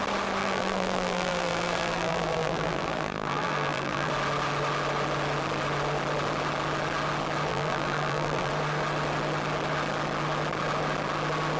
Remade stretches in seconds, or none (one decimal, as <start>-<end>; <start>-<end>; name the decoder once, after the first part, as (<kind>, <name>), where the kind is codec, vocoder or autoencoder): 0.4-4.1 (vocoder, BigVGAN v2); 7.5-8.5